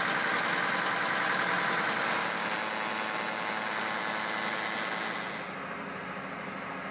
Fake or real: real